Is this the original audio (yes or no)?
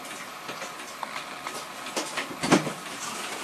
yes